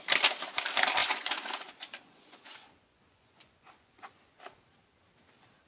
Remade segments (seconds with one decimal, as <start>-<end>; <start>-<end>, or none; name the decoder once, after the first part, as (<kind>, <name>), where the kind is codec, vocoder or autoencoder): 1.0-4.4 (vocoder, Vocos)